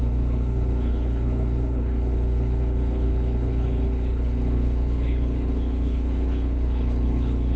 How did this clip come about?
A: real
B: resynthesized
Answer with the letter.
B